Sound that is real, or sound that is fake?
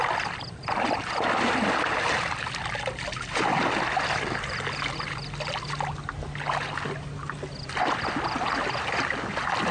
real